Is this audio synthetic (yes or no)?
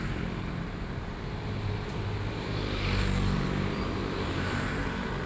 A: yes